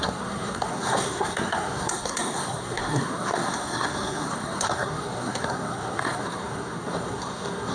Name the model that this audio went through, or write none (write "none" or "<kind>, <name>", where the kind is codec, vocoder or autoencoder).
codec, SNAC